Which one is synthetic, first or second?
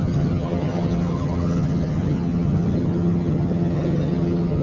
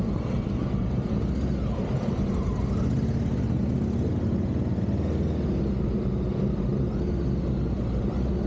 first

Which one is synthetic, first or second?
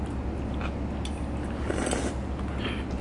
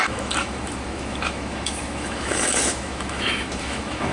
second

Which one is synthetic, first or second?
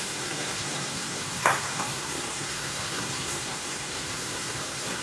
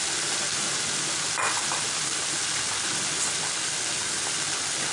first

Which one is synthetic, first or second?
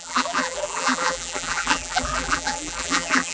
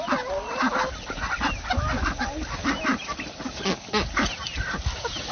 first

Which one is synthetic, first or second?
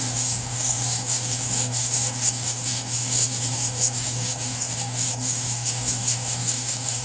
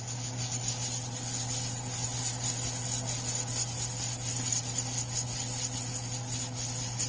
first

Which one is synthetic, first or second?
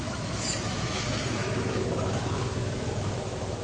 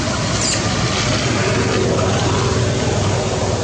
first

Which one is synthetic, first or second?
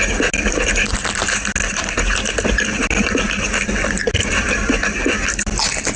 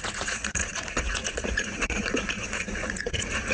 second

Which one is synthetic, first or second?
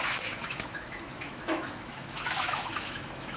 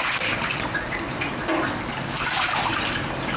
first